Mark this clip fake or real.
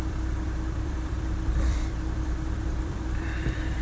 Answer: fake